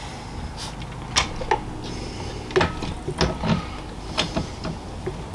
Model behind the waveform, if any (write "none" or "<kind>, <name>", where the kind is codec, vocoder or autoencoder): none